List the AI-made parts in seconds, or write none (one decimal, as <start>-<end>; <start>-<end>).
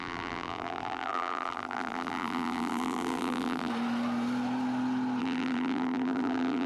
0.0-3.7; 5.2-6.7